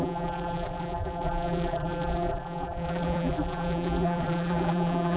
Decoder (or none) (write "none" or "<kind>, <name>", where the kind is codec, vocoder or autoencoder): vocoder, BigVGAN v2